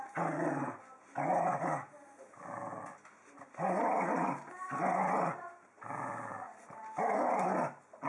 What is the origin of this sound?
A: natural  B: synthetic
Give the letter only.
A